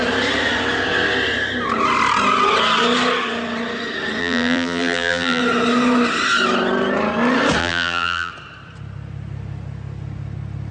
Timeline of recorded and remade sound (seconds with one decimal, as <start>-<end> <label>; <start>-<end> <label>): 0.0-4.2 recorded; 4.2-5.4 remade; 5.4-7.6 recorded; 7.6-8.3 remade; 8.3-10.7 recorded